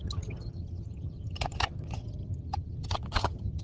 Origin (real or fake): fake